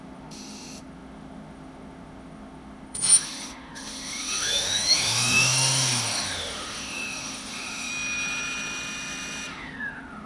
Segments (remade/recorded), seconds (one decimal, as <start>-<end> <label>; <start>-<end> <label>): 0.0-7.9 remade; 7.9-9.5 recorded; 9.5-10.3 remade